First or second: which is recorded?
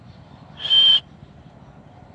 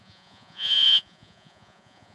first